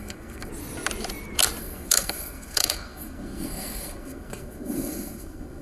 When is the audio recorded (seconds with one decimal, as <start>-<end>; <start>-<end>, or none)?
0.5-1.6